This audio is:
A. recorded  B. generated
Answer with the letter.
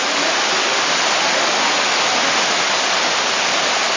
A